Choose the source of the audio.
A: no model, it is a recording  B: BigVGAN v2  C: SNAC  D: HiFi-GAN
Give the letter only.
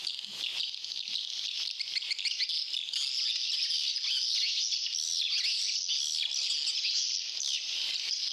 A